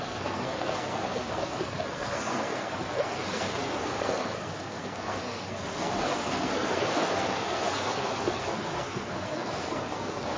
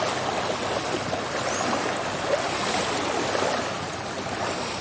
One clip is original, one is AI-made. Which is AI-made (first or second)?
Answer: first